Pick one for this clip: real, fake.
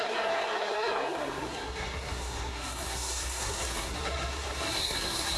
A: fake